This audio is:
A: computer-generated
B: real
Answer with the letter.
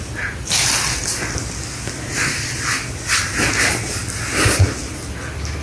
B